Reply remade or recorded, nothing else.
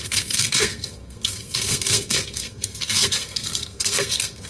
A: remade